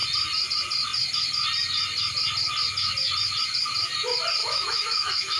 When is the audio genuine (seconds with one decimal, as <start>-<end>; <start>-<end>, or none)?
0.0-4.4